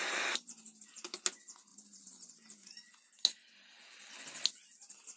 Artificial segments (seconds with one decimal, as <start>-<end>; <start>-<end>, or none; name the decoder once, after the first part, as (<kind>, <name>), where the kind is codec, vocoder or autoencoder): 1.7-2.3 (vocoder, BigVGAN v2)